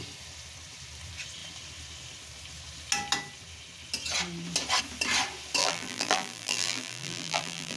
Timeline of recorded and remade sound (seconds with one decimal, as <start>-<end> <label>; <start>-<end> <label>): 0.0-5.6 recorded; 5.6-7.8 remade